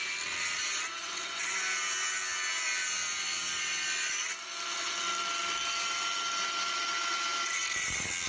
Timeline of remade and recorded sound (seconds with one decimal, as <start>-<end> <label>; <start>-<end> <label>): 0.0-0.9 recorded; 0.9-1.5 remade; 1.5-8.3 recorded